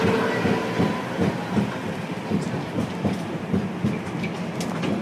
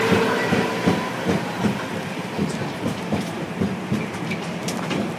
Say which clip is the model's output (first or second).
second